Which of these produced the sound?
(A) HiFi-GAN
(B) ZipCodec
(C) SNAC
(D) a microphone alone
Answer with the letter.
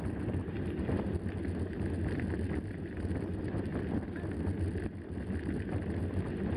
D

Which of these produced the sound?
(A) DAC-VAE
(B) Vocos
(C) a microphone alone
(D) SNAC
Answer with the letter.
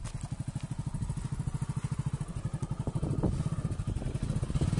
C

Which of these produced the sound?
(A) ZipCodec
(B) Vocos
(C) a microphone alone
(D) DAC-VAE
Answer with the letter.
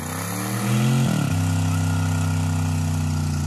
C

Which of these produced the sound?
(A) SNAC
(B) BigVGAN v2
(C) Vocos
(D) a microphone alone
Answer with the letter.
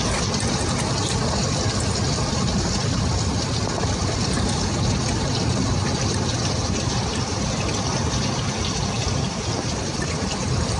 D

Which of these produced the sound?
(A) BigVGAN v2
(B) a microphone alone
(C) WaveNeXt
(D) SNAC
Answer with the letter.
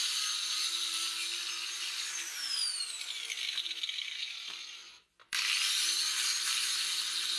A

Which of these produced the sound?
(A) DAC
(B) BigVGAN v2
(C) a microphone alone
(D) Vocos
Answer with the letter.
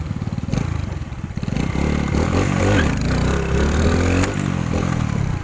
C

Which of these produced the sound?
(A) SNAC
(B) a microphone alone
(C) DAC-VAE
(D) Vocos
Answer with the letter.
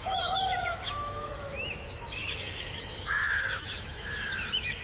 C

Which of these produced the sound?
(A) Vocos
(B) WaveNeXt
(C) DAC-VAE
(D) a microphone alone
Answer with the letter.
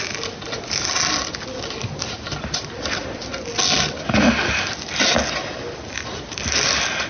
D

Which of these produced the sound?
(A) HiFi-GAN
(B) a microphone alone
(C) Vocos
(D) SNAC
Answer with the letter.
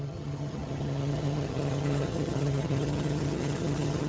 A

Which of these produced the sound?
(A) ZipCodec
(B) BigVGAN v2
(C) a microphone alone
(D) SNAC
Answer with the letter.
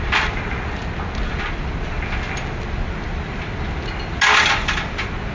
C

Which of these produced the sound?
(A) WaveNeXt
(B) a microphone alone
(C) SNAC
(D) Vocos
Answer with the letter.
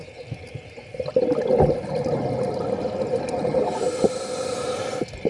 B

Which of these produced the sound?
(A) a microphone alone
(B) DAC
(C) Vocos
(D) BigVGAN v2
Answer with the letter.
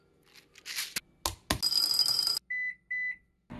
A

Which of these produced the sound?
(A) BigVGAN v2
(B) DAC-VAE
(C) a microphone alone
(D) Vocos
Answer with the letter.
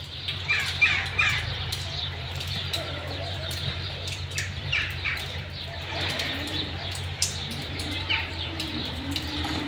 A